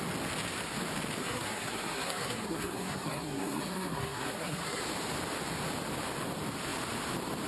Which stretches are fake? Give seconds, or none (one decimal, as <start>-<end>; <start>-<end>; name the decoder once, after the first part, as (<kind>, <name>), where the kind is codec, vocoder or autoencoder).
1.2-4.8 (codec, SNAC)